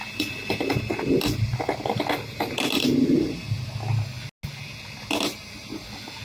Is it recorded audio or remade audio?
recorded